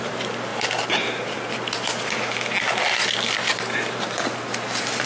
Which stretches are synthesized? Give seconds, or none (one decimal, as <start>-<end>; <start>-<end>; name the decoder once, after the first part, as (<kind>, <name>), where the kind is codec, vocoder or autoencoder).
0.5-1.5 (vocoder, BigVGAN v2)